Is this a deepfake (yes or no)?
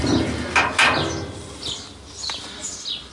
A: no